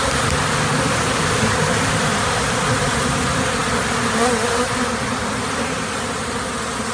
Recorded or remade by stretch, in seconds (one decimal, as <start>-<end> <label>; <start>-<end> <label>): 0.0-6.9 recorded